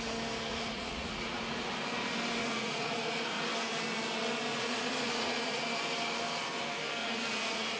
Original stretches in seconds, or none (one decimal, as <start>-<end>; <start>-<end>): 0.0-0.5; 1.4-2.4; 3.5-4.5; 5.6-7.0